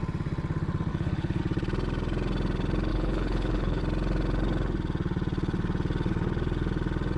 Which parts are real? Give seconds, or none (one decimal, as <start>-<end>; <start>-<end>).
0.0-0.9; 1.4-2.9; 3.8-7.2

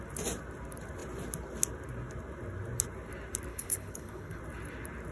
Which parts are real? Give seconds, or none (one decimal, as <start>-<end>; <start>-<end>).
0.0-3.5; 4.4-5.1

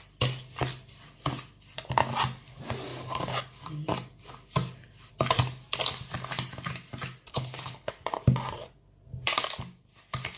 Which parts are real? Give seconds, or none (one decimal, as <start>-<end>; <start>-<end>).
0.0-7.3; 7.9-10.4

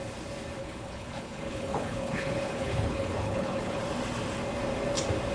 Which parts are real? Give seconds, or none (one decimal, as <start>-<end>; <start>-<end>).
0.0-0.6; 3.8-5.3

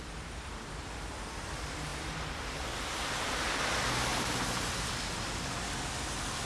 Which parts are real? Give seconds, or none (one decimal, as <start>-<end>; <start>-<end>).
0.0-6.4